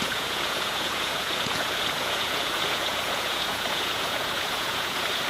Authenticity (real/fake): fake